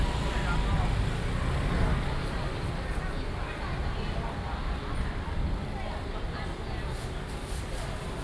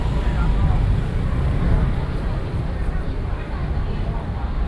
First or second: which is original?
first